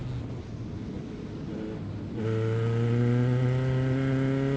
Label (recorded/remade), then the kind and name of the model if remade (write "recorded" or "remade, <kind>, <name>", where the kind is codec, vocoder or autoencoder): recorded